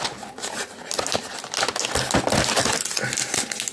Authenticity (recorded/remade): recorded